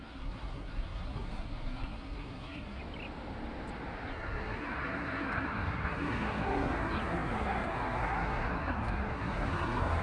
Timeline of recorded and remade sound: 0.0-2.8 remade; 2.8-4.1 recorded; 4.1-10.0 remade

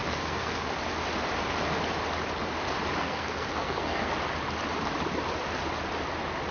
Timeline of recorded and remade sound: 0.0-0.7 remade; 0.7-3.0 recorded; 3.0-4.1 remade; 4.1-6.5 recorded

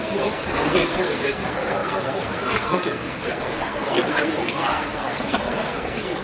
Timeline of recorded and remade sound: 0.0-6.2 remade

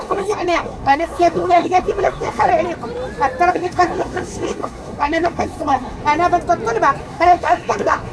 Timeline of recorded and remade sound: 0.0-2.5 remade; 2.5-3.5 recorded; 3.5-6.0 remade; 6.0-7.0 recorded; 7.0-8.1 remade

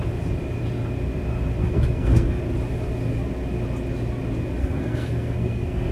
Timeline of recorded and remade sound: 0.0-1.6 recorded; 1.6-2.4 remade; 2.4-4.6 recorded; 4.6-5.9 remade